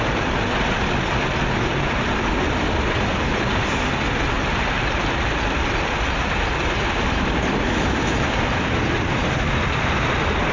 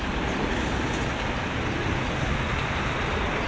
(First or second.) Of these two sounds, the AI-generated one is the first